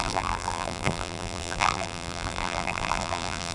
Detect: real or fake fake